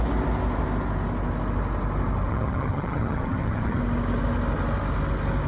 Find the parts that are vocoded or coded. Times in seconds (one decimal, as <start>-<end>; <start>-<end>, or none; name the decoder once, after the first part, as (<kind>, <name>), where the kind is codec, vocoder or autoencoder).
2.3-3.8 (vocoder, HiFi-GAN)